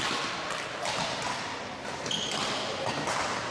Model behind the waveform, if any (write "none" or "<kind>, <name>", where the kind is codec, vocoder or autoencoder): none